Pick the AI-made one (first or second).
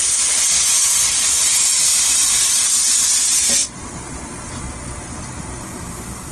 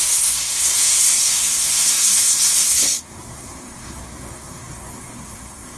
second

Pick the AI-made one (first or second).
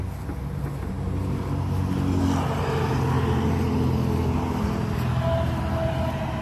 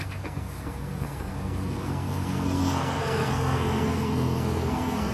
second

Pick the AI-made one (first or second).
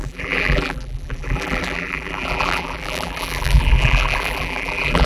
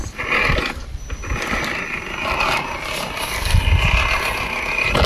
first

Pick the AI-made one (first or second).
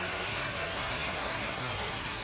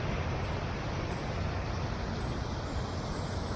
first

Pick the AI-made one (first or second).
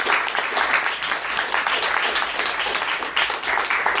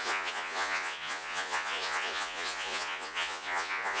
second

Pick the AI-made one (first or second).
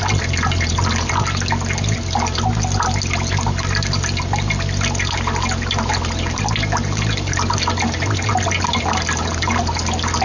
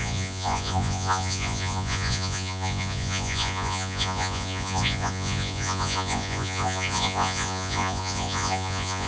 second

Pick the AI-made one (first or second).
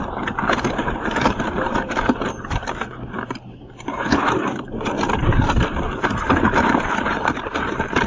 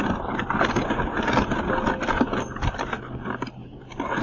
first